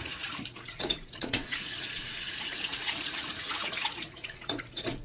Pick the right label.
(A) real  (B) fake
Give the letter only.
B